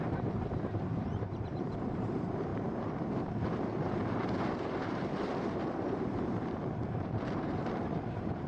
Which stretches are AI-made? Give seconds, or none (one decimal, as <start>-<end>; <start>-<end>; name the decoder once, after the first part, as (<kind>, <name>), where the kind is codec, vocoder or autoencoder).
0.0-8.5 (vocoder, BigVGAN v2)

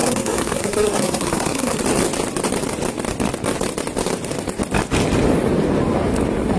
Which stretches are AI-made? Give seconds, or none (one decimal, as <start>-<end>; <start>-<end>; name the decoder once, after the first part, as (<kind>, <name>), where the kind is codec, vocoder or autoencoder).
0.0-1.8 (codec, SNAC)

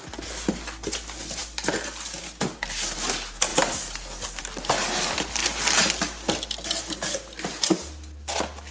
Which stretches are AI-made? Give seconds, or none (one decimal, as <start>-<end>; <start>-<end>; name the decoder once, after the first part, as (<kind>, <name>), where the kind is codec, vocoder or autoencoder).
none

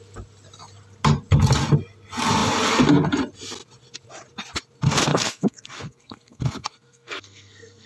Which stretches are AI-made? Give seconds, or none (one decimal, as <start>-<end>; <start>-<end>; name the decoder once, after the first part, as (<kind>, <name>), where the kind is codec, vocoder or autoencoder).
5.1-7.9 (codec, SNAC)

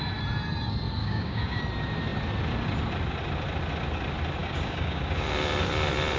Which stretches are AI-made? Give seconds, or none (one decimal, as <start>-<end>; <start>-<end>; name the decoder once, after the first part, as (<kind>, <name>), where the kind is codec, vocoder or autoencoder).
1.0-1.6 (codec, DAC); 4.4-5.0

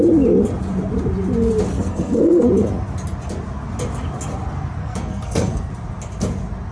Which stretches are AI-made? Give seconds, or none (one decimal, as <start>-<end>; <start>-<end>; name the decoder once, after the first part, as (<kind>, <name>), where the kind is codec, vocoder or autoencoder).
1.7-2.5 (codec, SNAC); 4.8-5.7

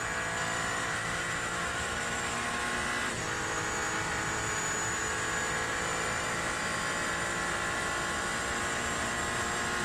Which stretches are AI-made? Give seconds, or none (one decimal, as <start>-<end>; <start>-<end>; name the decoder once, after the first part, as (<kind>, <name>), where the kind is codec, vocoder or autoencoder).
1.0-2.6 (autoencoder, DAC-VAE)

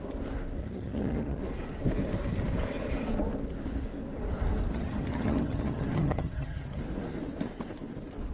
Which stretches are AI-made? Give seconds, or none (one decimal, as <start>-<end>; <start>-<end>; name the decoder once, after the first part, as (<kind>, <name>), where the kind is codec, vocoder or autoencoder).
0.6-1.4 (vocoder, HiFi-GAN); 4.7-6.8